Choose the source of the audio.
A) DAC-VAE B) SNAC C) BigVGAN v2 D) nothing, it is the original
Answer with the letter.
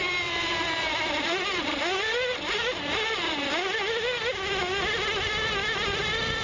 D